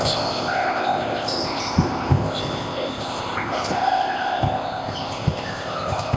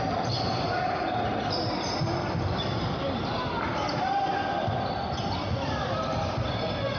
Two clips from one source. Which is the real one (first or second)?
second